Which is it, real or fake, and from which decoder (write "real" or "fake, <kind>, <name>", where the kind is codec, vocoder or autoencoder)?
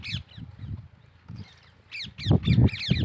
real